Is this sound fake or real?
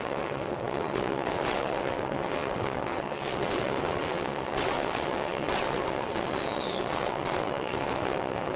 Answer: fake